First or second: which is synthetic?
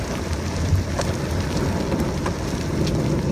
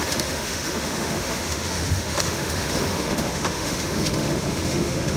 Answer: second